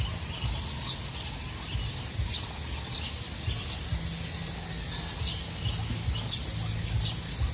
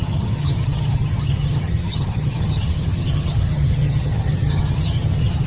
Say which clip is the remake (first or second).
second